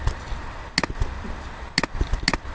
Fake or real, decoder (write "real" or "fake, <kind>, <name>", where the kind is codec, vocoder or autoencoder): real